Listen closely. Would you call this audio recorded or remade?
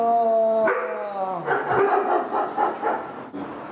recorded